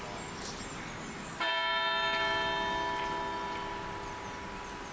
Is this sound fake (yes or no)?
no